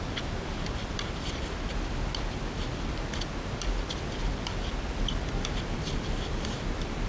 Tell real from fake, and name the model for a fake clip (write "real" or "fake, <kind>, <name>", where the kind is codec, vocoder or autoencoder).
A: real